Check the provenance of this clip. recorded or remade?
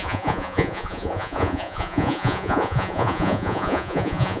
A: remade